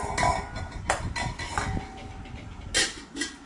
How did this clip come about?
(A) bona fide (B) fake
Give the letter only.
A